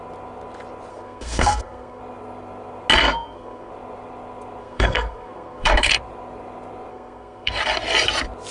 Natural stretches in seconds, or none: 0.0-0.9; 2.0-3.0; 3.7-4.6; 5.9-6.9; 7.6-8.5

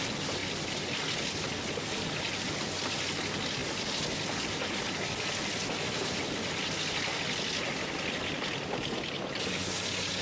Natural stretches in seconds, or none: 0.0-10.2

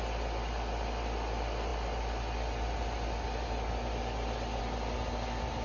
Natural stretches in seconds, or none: 0.0-5.6

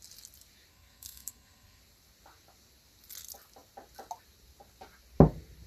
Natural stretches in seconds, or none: 0.0-0.7; 1.8-5.7

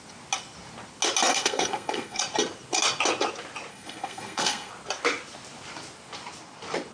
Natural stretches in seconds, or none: 0.0-1.3; 2.2-3.7; 4.7-6.9